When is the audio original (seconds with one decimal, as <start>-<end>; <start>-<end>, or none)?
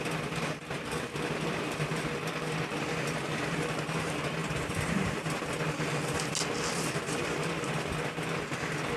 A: 0.0-4.4; 5.5-9.0